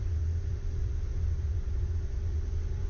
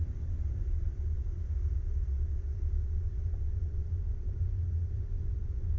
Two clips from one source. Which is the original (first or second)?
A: first